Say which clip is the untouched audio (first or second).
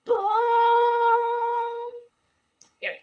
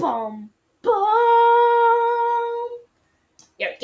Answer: second